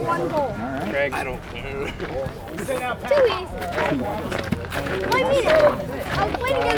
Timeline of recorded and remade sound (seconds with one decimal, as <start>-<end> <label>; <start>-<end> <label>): 0.0-3.3 recorded; 3.3-4.1 remade; 4.1-4.8 recorded; 4.8-6.8 remade